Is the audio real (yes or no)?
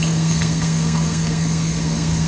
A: no